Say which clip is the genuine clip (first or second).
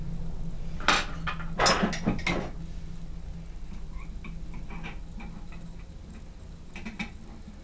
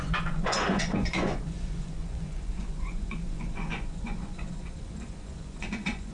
first